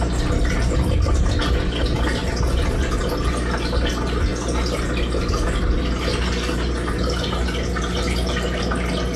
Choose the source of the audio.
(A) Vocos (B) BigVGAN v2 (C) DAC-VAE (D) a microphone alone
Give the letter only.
D